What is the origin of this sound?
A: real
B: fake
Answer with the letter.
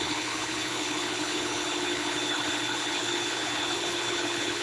B